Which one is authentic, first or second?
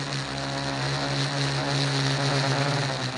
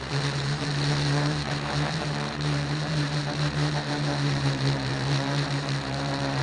first